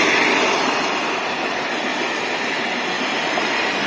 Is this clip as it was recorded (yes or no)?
yes